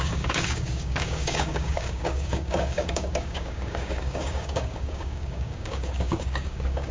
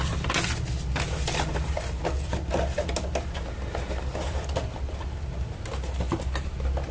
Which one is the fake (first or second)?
first